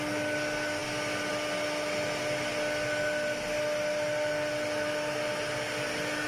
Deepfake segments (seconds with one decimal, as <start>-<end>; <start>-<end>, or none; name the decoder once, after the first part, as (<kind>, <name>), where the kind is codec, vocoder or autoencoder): none